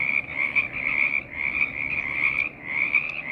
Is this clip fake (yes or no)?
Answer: no